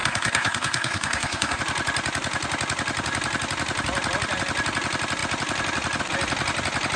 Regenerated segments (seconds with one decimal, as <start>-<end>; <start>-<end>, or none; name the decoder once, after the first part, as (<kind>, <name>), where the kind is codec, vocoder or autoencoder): 0.0-1.6 (codec, SNAC)